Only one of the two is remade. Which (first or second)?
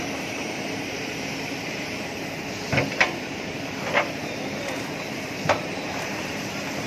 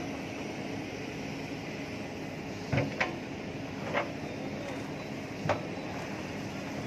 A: first